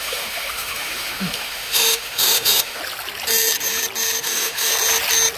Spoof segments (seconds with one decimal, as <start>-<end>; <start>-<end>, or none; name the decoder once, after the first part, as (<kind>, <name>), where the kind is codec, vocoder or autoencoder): 0.0-2.8 (autoencoder, DAC-VAE); 4.2-4.7